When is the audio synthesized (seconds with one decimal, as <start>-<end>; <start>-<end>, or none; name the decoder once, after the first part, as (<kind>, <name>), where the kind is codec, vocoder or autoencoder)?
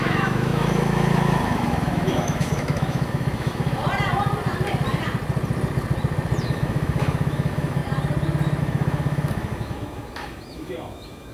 0.0-3.8 (autoencoder, DAC-VAE); 6.4-7.8; 8.6-11.3